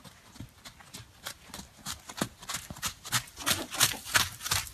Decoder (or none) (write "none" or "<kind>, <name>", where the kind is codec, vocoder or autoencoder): none